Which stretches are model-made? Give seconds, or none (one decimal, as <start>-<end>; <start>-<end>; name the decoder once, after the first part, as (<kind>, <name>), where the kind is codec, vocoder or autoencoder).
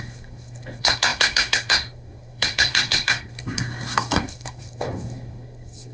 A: 0.0-5.9 (codec, SNAC)